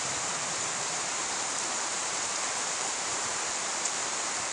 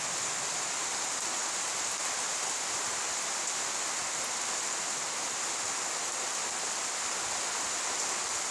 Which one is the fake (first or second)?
first